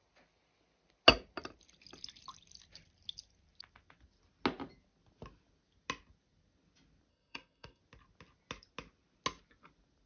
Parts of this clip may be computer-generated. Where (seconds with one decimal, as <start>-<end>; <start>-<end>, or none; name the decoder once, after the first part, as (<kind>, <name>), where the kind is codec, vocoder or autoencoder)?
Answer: 7.1-7.8 (codec, SNAC)

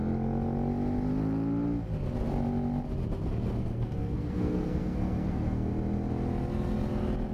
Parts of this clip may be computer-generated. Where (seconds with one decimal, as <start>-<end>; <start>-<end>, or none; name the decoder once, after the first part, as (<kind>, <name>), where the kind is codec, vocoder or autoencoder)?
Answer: 3.6-5.7 (codec, SNAC)

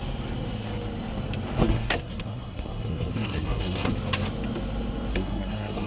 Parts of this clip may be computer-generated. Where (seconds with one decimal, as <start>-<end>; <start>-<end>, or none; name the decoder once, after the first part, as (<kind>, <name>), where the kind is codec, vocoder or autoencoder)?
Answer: 1.6-3.9 (codec, SNAC); 5.1-5.9

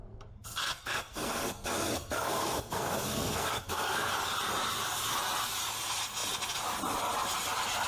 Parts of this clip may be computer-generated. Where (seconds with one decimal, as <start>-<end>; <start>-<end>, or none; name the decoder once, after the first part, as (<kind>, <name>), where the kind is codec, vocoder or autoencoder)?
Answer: 0.0-4.1 (codec, SNAC)